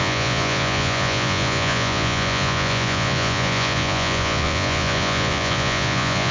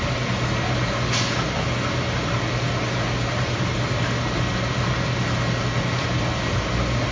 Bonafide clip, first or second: second